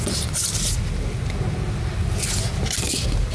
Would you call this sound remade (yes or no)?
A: no